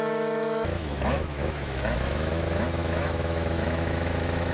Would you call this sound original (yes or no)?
no